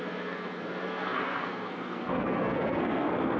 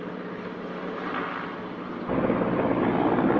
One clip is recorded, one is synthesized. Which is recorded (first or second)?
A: second